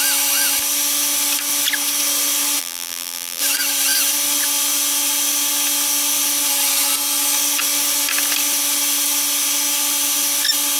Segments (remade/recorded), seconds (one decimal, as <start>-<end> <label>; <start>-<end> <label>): 0.0-2.6 recorded; 2.6-3.4 remade; 3.4-10.8 recorded